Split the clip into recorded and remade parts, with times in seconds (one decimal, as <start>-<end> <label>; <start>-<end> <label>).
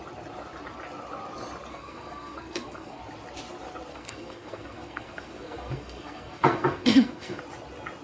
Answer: 0.0-1.7 recorded; 1.7-3.0 remade; 3.0-3.9 recorded; 3.9-7.4 remade; 7.4-8.0 recorded